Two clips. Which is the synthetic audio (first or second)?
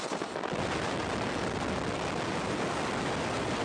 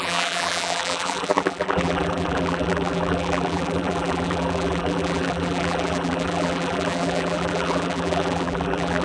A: second